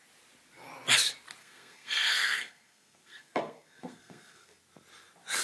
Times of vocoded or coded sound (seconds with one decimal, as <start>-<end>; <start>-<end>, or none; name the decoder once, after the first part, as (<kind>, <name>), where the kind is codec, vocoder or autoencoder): 1.4-4.6 (codec, SNAC)